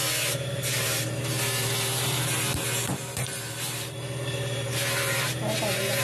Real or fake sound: fake